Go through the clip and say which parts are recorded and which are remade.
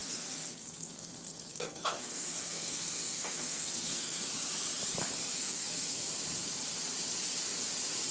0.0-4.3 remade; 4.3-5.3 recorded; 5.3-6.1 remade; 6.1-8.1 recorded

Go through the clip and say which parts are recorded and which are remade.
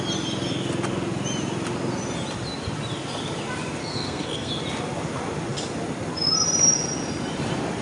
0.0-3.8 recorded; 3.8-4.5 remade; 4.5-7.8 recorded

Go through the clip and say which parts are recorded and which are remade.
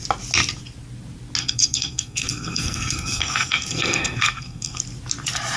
0.0-1.4 recorded; 1.4-4.8 remade; 4.8-5.6 recorded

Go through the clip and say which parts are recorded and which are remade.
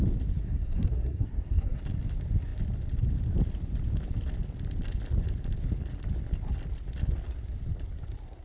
0.0-0.4 recorded; 0.4-1.8 remade; 1.8-8.4 recorded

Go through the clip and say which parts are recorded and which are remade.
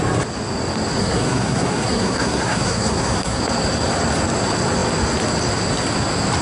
0.0-1.0 recorded; 1.0-3.4 remade; 3.4-6.4 recorded